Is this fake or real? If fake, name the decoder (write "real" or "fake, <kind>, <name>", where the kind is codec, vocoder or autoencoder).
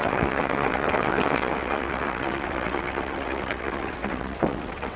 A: fake, vocoder, WaveNeXt